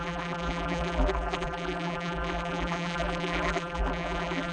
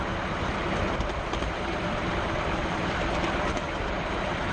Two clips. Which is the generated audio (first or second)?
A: first